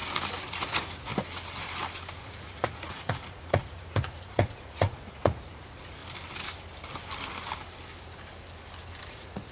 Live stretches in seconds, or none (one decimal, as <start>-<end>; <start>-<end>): 0.0-0.5; 1.1-2.2; 6.0-9.1